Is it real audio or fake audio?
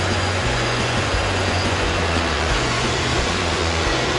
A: fake